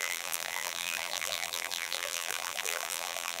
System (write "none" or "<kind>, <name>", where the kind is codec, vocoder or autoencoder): vocoder, BigVGAN v2